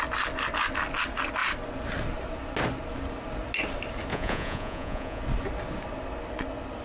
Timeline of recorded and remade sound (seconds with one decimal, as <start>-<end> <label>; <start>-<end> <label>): 0.0-4.1 recorded; 4.1-5.2 remade; 5.2-6.8 recorded